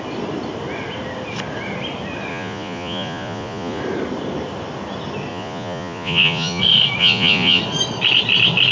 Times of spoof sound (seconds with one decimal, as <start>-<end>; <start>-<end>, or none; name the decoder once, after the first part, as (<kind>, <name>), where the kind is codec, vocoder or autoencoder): 2.3-3.8 (vocoder, Vocos); 5.3-6.6; 7.0-7.6

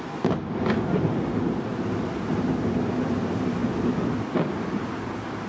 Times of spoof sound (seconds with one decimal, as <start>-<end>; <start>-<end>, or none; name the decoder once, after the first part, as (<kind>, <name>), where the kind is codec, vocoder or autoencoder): none

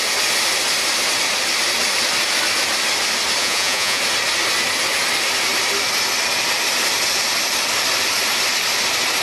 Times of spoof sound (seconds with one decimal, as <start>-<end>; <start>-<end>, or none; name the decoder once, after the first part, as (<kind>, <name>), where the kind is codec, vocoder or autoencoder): 3.4-4.0 (vocoder, Vocos)

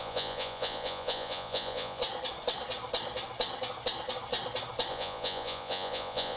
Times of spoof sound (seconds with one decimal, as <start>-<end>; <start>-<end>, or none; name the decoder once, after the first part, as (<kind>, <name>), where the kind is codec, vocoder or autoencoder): 0.0-2.0 (vocoder, Vocos); 4.9-6.4

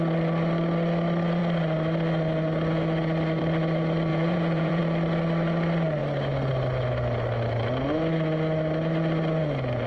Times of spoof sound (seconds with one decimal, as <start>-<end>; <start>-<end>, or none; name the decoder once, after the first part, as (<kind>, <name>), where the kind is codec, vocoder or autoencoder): 4.1-4.8 (vocoder, Vocos)

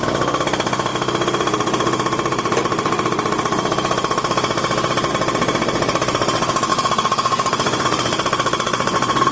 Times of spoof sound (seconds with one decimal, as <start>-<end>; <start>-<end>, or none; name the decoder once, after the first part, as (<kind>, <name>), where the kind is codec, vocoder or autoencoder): 6.7-9.3 (vocoder, Vocos)

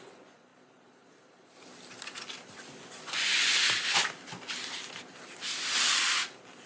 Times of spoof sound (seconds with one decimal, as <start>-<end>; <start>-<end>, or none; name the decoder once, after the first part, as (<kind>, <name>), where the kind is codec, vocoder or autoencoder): 0.0-0.5 (vocoder, Vocos); 2.8-3.5